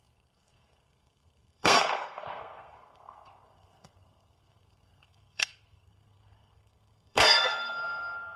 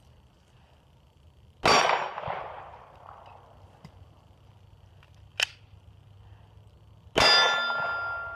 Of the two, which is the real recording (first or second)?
second